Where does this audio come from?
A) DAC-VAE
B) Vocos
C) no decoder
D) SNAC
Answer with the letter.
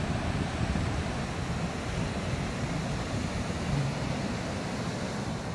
C